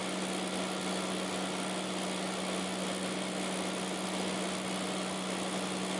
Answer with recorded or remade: recorded